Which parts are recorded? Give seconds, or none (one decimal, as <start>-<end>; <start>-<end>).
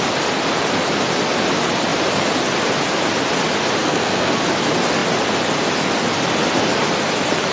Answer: 0.0-3.8; 4.3-7.5